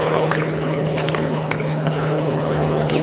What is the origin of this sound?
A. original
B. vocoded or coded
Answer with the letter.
B